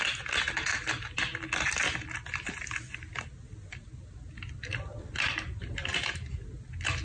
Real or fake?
real